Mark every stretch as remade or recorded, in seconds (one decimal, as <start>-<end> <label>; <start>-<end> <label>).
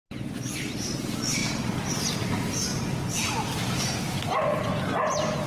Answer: 0.0-5.5 recorded